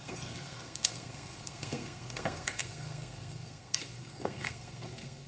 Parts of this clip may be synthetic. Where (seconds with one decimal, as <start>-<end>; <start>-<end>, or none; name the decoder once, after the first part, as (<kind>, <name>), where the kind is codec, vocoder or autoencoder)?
0.0-5.3 (codec, SNAC)